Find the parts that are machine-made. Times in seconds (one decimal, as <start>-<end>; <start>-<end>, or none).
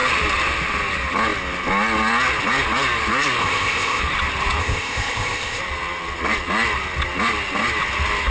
3.4-4.0; 4.6-5.6